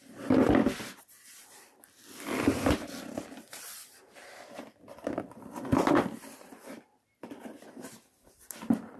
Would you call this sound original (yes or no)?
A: no